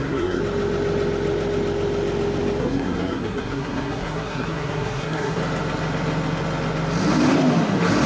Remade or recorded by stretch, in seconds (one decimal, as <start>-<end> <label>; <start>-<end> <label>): 0.0-0.4 remade; 0.4-2.6 recorded; 2.6-5.4 remade; 5.4-8.1 recorded

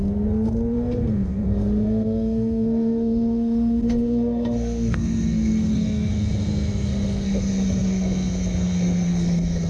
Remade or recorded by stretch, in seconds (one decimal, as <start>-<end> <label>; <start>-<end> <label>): 0.0-9.7 remade

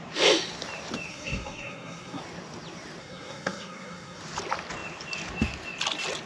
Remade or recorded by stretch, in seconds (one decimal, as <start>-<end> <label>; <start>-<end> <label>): 0.0-1.1 recorded; 1.1-2.2 remade; 2.2-3.0 recorded; 3.0-4.2 remade; 4.2-6.3 recorded

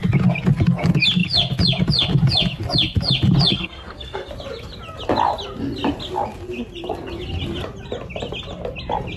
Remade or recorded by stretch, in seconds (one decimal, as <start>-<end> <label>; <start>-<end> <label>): 0.0-3.5 recorded; 3.5-4.3 remade; 4.3-9.2 recorded

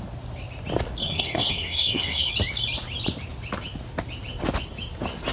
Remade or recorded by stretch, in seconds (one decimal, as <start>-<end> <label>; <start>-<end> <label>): 0.0-1.0 recorded; 1.0-2.3 remade; 2.3-5.3 recorded

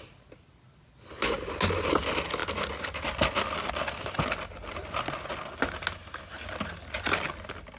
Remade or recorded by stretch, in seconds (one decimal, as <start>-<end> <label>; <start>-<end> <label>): 0.0-7.8 recorded

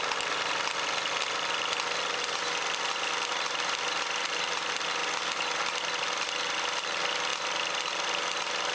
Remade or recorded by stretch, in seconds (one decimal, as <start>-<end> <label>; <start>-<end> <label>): 0.0-8.7 recorded